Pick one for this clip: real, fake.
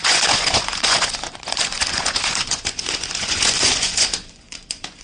fake